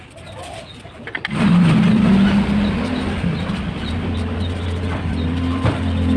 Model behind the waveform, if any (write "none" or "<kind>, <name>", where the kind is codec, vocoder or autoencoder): none